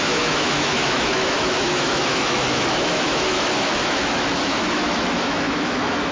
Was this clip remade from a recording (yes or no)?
yes